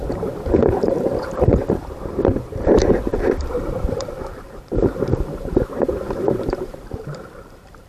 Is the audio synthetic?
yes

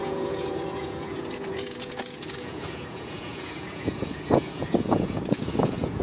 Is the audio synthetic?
yes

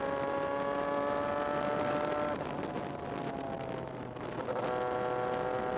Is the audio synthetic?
no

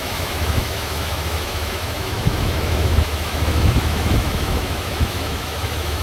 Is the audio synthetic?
yes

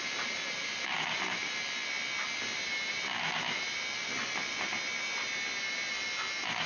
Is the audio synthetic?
no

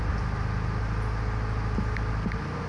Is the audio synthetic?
no